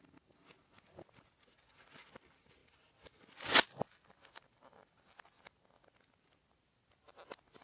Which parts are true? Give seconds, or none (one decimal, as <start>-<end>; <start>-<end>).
0.0-7.6